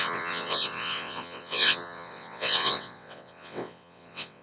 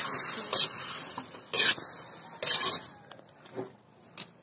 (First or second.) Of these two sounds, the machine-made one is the first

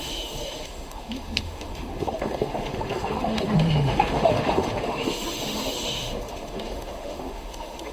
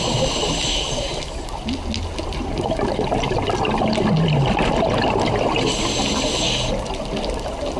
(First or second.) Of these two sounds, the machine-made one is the first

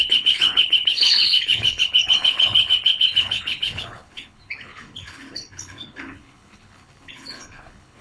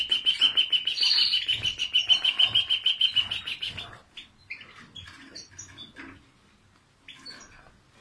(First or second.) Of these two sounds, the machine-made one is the first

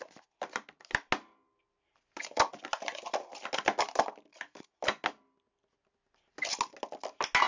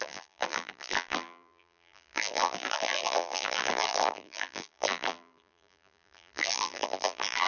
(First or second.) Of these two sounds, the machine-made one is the second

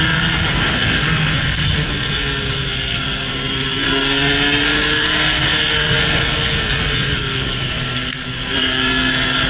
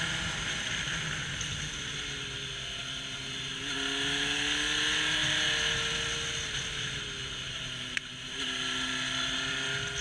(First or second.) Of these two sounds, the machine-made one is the first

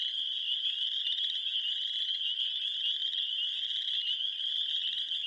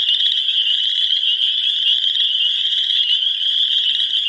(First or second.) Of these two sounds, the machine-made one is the second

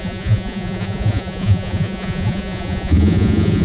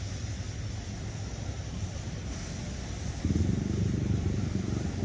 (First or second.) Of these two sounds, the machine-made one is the first